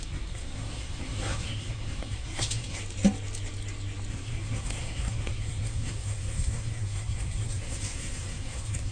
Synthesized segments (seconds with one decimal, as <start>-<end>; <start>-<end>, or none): 0.0-2.8; 4.1-8.9

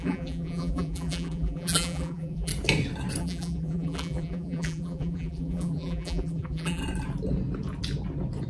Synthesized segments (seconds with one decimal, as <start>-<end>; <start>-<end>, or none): 0.0-2.5; 3.2-6.8